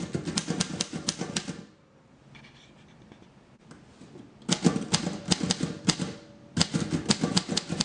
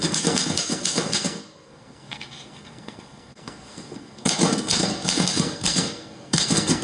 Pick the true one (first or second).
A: first